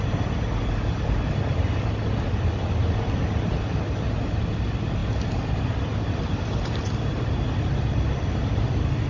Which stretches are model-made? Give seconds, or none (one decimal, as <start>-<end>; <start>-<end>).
none